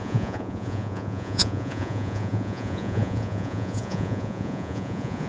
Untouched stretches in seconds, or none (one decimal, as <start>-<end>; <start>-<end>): none